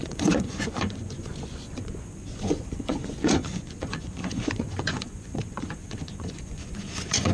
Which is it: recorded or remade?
remade